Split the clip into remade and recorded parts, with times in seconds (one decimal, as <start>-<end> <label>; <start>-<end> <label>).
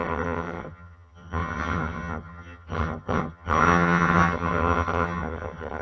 0.0-5.8 remade